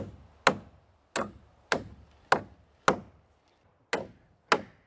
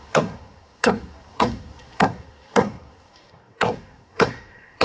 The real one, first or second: first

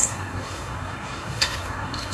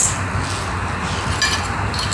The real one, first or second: second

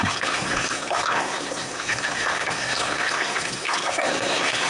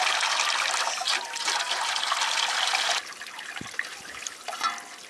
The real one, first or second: second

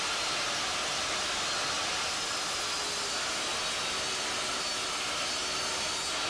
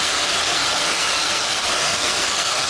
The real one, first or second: first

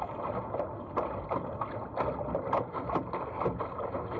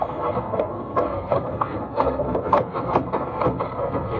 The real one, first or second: first